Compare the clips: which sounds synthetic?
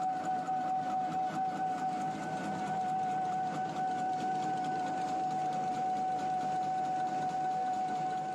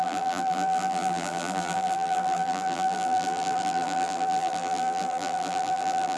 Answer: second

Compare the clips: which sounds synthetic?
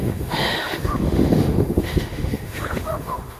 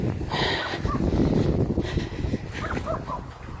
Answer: first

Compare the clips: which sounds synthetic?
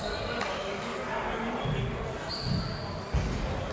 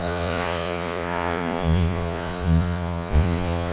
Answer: second